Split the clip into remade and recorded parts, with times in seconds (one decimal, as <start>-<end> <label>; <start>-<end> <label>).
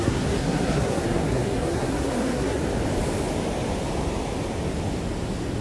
0.0-2.6 remade; 2.6-5.6 recorded